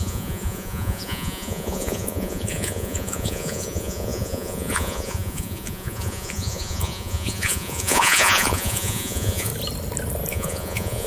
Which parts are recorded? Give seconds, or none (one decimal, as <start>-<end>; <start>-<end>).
9.5-10.3